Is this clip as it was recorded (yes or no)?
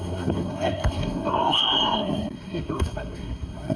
no